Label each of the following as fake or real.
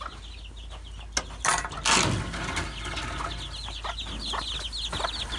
real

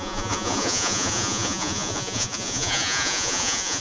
fake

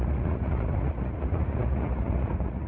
fake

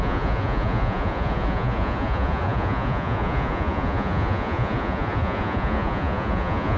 fake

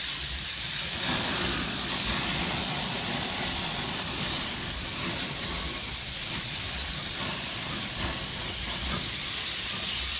fake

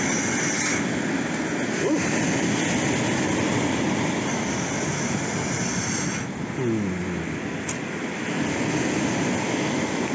real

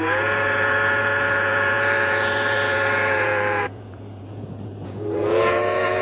fake